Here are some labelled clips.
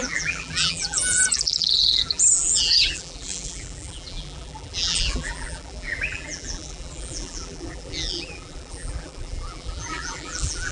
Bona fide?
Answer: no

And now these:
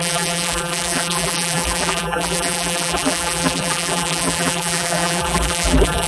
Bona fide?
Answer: no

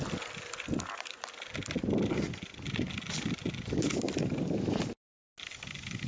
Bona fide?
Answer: yes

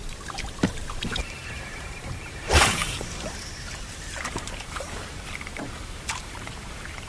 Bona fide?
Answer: no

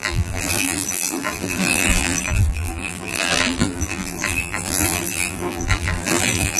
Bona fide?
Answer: no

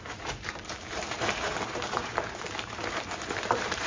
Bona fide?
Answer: no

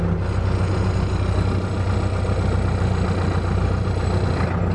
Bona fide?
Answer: yes